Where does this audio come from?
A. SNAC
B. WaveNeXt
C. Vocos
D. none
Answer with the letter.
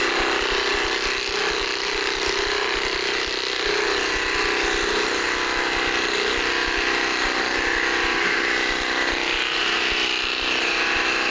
D